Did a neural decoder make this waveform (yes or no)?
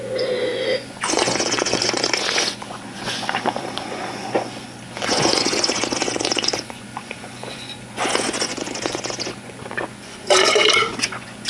yes